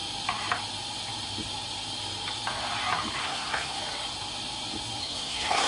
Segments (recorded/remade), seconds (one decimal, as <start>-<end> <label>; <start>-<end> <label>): 0.0-3.2 recorded; 3.2-3.8 remade; 3.8-5.0 recorded; 5.0-5.7 remade